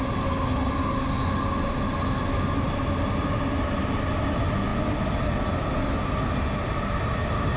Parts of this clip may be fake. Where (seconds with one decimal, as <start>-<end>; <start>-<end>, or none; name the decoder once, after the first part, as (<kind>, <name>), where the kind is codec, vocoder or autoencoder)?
none